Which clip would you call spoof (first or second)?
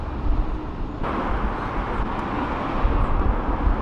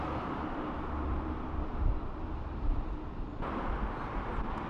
second